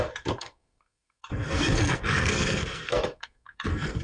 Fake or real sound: fake